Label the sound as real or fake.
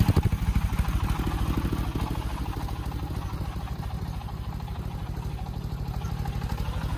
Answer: real